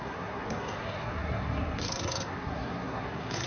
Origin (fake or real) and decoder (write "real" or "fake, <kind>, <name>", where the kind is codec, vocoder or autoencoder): fake, codec, SNAC